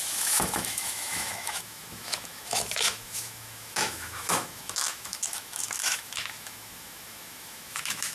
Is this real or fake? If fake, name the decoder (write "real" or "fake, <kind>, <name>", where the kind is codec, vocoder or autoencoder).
fake, autoencoder, DAC-VAE